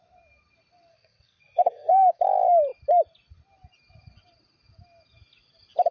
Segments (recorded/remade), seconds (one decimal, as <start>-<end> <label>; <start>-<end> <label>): 0.0-0.9 recorded; 0.9-2.2 remade; 2.2-5.9 recorded